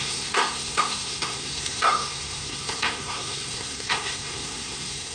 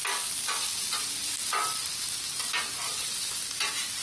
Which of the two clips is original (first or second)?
second